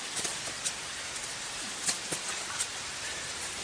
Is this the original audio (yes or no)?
yes